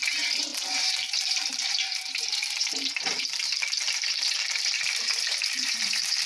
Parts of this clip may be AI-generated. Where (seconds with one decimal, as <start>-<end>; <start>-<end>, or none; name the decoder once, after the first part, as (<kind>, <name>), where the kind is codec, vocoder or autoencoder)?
0.0-6.3 (vocoder, BigVGAN v2)